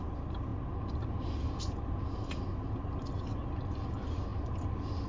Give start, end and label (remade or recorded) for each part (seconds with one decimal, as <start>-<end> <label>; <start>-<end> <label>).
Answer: 0.0-5.1 recorded

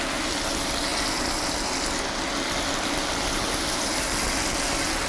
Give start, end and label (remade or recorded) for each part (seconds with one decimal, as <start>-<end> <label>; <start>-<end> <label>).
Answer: 0.0-5.1 recorded

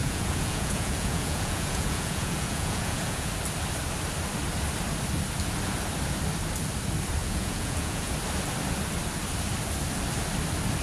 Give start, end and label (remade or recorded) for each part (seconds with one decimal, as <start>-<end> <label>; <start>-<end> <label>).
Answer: 0.0-3.3 remade; 3.3-7.2 recorded; 7.2-8.1 remade; 8.1-10.8 recorded

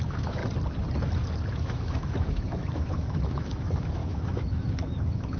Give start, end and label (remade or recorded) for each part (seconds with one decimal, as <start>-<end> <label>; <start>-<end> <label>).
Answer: 0.0-0.4 remade; 0.4-1.5 recorded; 1.5-5.4 remade

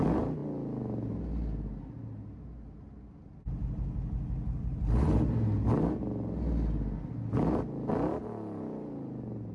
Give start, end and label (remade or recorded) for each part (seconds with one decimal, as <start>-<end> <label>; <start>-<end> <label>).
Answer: 0.0-9.5 recorded